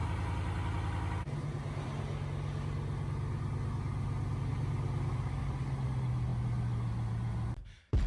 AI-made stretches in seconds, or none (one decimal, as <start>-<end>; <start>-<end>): none